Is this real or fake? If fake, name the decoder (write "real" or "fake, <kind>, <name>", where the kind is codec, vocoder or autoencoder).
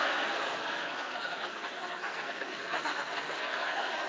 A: fake, codec, SNAC